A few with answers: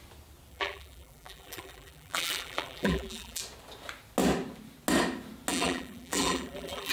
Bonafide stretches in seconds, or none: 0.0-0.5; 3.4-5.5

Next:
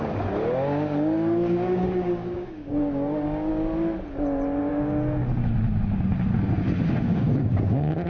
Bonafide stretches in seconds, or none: 3.5-4.7; 5.2-7.1

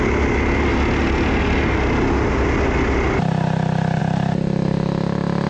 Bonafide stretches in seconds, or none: 0.0-5.5

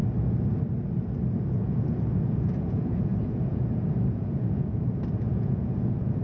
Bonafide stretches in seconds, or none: 0.0-1.3

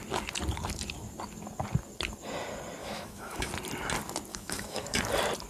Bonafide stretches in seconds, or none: 0.0-2.8; 3.5-4.3; 5.0-5.5

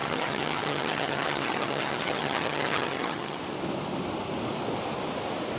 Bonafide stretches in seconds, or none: 3.4-5.6